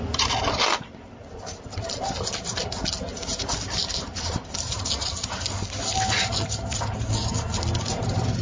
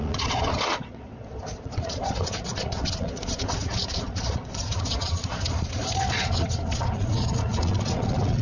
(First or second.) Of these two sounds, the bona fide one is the first